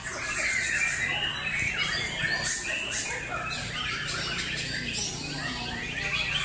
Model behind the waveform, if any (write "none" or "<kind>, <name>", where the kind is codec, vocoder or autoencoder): none